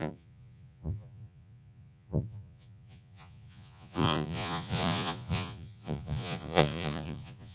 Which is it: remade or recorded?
remade